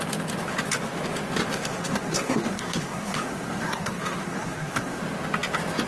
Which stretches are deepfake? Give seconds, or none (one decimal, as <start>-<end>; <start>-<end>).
1.5-5.0

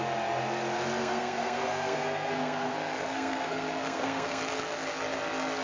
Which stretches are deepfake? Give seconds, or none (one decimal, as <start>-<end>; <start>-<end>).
1.0-4.4